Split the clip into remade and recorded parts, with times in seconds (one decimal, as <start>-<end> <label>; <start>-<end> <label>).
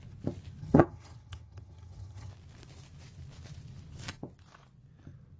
0.0-0.6 recorded; 0.6-2.3 remade; 2.3-5.4 recorded